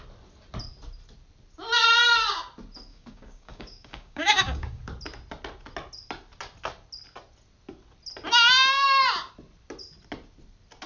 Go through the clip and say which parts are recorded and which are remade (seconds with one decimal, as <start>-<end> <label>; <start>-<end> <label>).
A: 0.0-2.9 recorded; 2.9-4.8 remade; 4.8-10.9 recorded